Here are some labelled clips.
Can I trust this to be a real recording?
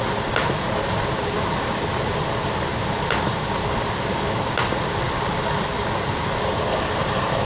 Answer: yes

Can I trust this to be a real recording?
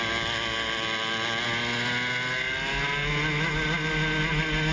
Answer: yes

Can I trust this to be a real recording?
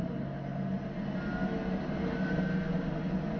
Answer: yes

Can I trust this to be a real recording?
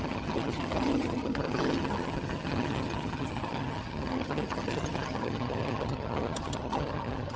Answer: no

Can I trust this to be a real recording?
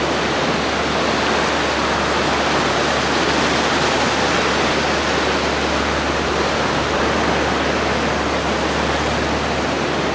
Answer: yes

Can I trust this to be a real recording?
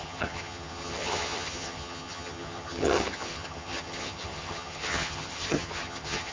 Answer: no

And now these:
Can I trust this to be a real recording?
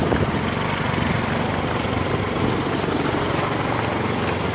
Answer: yes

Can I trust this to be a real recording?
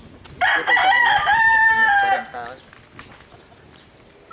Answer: yes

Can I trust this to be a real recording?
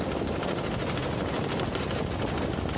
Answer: yes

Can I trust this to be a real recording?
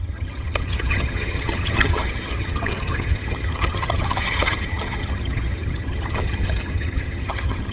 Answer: no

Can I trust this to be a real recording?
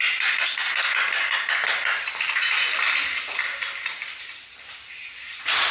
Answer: yes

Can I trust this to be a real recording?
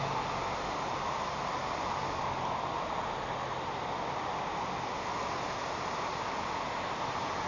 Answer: yes